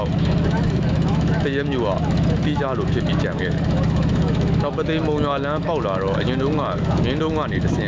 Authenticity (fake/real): fake